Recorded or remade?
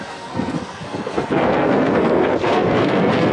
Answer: remade